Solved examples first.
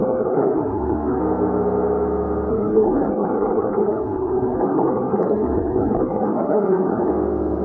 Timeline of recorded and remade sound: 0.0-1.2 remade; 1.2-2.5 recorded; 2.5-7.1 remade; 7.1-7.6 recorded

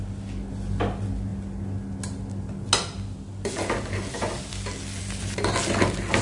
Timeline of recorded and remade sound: 0.0-6.2 recorded

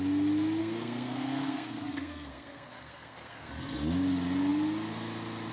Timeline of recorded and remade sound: 0.0-0.6 recorded; 0.6-3.5 remade; 3.5-5.5 recorded